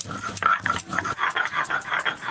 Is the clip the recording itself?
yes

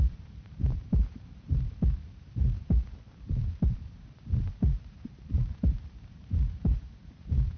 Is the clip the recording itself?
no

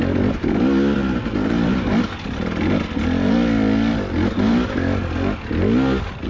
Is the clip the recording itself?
yes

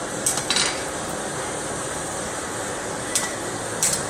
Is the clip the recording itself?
no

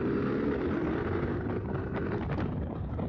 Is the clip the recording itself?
no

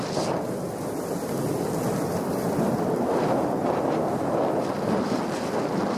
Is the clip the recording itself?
yes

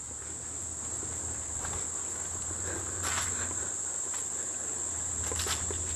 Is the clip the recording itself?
no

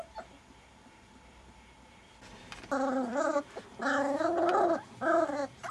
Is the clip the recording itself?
no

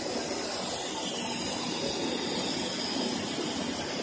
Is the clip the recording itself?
yes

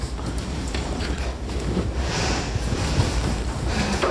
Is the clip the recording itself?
no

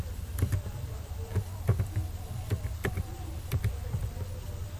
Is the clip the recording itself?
no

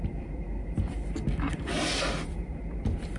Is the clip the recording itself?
no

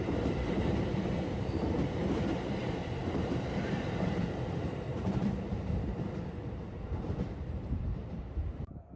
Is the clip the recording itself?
no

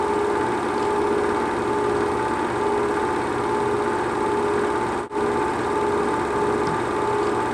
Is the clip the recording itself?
yes